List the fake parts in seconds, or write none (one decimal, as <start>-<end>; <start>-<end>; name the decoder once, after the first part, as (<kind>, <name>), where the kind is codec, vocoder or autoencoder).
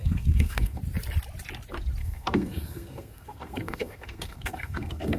0.0-0.8 (codec, SNAC); 2.0-5.2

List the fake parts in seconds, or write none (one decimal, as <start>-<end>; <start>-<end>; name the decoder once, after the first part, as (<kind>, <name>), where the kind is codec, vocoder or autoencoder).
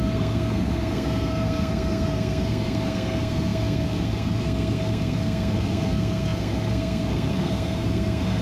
0.0-8.4 (codec, SNAC)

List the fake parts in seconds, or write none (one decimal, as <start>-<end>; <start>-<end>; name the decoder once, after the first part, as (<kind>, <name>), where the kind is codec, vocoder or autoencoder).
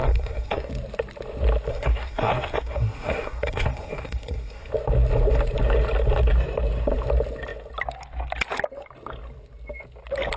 0.0-0.7 (codec, SNAC); 1.7-4.7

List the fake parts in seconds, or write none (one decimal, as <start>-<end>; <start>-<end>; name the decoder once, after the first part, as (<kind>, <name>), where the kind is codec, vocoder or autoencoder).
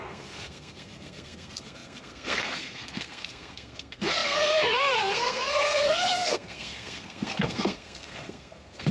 0.0-8.9 (codec, SNAC)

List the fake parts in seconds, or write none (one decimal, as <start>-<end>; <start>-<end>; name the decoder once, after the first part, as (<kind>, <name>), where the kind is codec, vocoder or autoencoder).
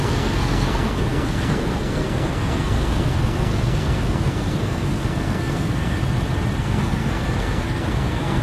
0.0-6.0 (codec, SNAC); 6.6-8.4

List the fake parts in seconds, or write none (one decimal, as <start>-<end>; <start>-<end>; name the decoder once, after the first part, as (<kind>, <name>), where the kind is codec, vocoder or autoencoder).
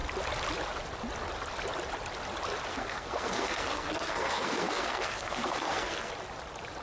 2.7-6.1 (codec, SNAC)